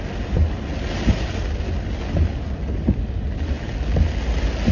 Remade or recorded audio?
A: recorded